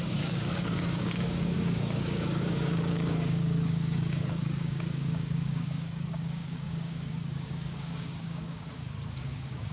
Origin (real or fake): fake